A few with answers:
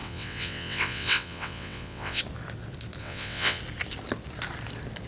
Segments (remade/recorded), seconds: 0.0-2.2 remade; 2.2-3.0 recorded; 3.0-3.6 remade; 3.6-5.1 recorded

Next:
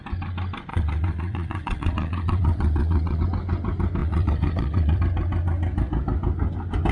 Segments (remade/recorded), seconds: 0.0-0.7 recorded; 0.7-3.2 remade; 3.2-4.0 recorded; 4.0-5.0 remade; 5.0-6.9 recorded

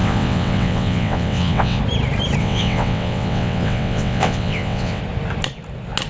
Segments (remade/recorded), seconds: 0.0-1.8 remade; 1.8-2.4 recorded; 2.4-5.0 remade; 5.0-6.1 recorded

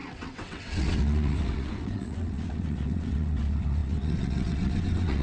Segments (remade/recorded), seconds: 0.0-5.2 remade

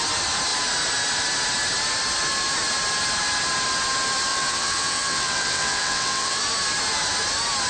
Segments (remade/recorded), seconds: 0.0-4.3 recorded; 4.3-6.4 remade; 6.4-7.7 recorded

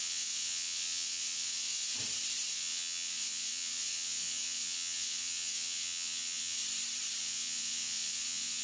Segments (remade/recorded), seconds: 0.0-1.9 remade; 1.9-2.5 recorded; 2.5-6.6 remade; 6.6-7.2 recorded; 7.2-8.6 remade